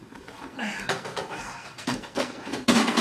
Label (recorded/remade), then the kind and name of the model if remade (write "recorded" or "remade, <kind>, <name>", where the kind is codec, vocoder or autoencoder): remade, codec, SNAC